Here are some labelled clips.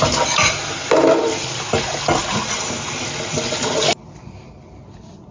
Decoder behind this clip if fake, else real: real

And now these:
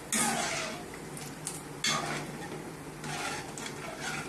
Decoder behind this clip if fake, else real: real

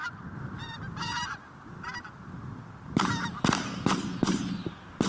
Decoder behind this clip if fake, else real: real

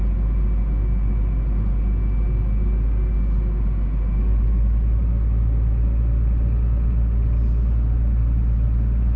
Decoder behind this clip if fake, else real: real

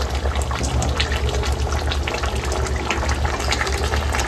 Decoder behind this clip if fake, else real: real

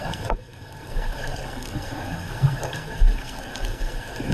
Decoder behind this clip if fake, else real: fake, codec, SNAC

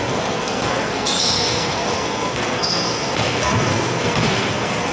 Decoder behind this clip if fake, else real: fake, codec, SNAC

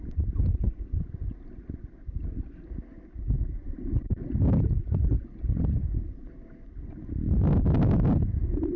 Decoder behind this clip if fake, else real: real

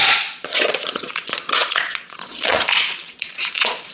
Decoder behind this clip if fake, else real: fake, vocoder, Vocos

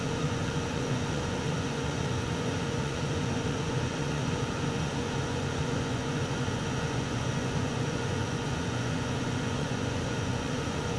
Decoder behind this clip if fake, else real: fake, vocoder, Vocos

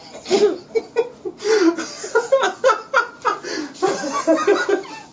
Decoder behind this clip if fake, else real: real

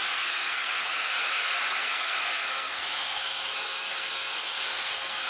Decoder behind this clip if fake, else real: fake, codec, SNAC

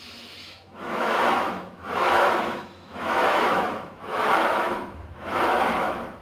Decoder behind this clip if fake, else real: fake, autoencoder, DAC-VAE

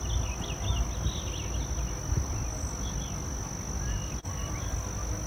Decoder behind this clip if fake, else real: real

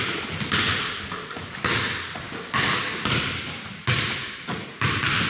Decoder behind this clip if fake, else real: real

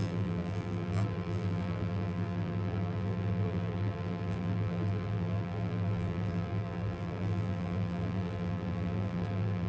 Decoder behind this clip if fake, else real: fake, vocoder, BigVGAN v2